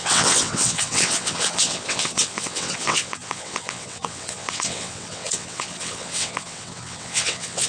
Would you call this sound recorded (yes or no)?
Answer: no